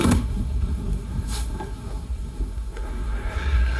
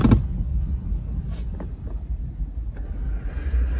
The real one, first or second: second